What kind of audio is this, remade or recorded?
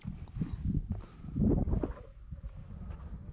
recorded